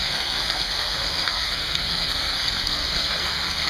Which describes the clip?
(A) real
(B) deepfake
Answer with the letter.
B